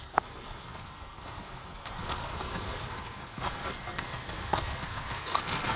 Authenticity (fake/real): fake